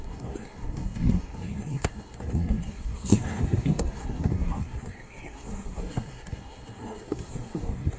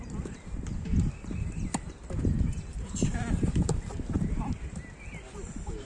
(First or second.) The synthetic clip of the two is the first